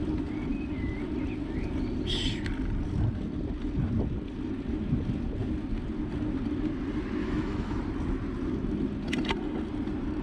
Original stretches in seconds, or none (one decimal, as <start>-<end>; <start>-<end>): 0.0-7.2; 7.8-10.2